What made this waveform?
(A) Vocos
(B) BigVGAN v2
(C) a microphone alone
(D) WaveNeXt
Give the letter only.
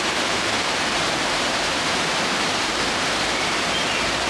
B